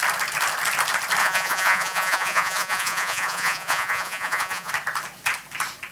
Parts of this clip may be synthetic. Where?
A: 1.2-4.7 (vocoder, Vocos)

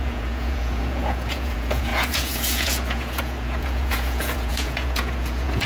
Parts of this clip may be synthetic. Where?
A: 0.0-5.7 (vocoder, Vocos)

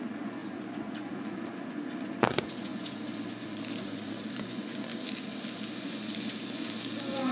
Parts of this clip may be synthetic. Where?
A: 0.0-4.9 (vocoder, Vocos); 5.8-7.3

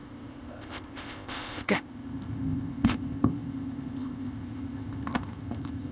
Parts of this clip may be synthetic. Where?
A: 0.0-5.9 (codec, ZipCodec)

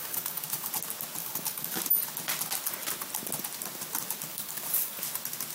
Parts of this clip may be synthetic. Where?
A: 0.0-0.7 (codec, DAC); 1.2-1.8; 4.3-5.0

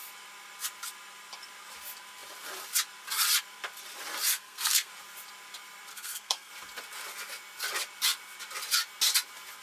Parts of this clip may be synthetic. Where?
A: 4.3-4.9 (codec, SNAC); 5.9-6.5

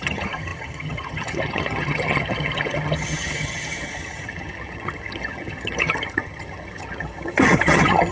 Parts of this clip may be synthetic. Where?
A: 0.0-8.1 (vocoder, HiFi-GAN)